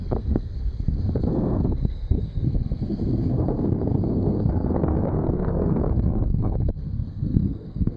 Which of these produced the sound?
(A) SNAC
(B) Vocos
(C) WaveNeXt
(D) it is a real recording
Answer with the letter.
A